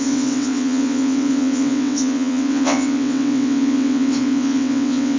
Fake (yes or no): yes